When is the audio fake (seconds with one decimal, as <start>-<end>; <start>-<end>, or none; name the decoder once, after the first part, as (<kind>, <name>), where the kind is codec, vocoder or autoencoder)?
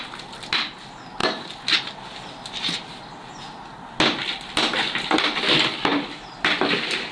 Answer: 5.9-7.1 (vocoder, BigVGAN v2)